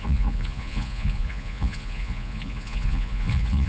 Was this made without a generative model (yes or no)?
no